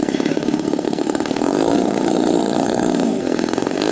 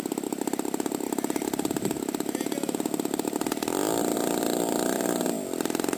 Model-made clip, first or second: first